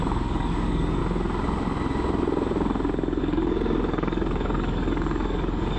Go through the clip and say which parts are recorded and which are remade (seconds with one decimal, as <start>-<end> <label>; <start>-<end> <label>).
0.0-1.0 remade; 1.0-3.2 recorded; 3.2-5.8 remade

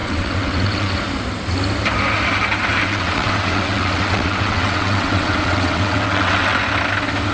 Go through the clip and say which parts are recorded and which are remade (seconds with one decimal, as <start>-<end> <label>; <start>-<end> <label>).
0.0-0.9 remade; 0.9-2.8 recorded; 2.8-6.6 remade; 6.6-7.3 recorded